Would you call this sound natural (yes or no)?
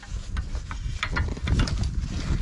yes